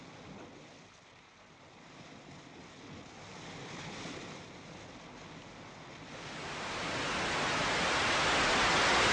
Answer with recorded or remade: recorded